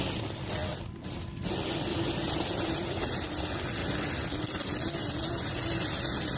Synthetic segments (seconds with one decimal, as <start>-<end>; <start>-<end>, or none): 1.9-3.3